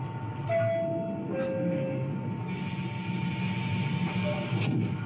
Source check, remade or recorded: recorded